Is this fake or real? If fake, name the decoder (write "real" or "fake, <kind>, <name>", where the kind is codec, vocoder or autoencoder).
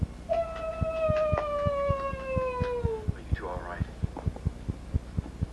real